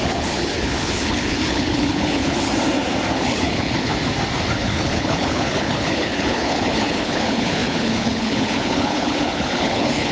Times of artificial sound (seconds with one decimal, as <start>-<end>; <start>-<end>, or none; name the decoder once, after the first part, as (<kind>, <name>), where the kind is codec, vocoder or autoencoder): 0.0-2.5 (codec, HILCodec); 3.1-3.9; 4.6-10.1